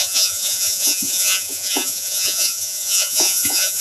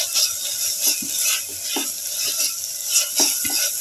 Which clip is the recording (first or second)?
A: second